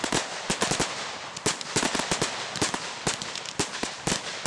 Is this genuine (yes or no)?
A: yes